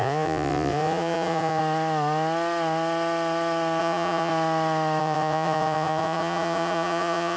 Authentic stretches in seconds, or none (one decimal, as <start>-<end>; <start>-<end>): 1.6-3.8; 4.3-5.0